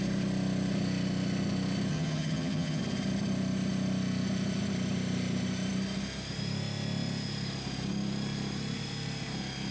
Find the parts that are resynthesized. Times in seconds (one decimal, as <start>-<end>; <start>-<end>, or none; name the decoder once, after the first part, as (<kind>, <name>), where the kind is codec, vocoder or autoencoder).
1.9-2.8 (vocoder, HiFi-GAN)